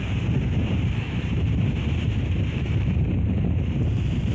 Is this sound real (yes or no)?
no